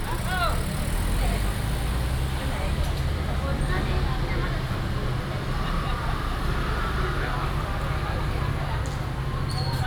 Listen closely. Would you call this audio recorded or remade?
recorded